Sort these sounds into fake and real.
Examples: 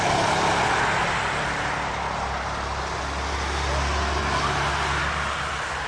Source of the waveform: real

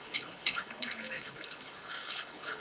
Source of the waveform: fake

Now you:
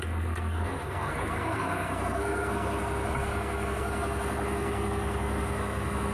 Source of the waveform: fake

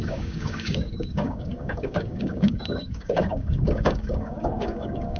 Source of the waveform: fake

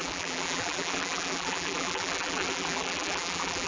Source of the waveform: fake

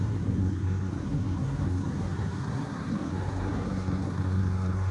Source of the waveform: fake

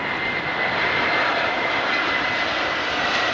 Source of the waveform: real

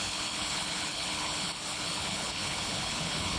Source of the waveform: fake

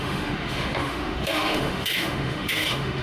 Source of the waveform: fake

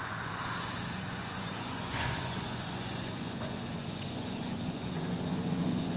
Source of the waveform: fake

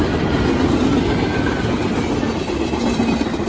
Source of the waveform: real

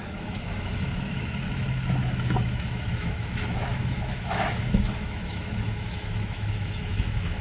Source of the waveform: fake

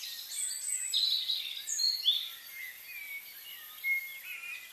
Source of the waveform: real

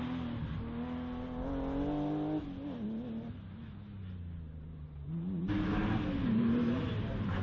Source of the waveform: real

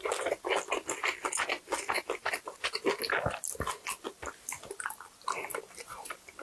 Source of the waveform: real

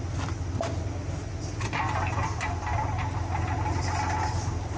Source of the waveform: real